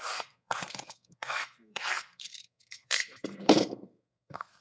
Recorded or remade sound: remade